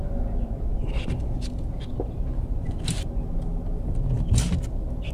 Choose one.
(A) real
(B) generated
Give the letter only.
A